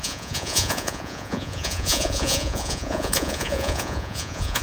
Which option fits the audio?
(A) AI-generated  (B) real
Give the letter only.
A